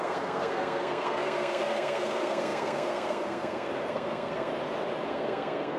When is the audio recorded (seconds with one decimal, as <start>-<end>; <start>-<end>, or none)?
4.5-5.1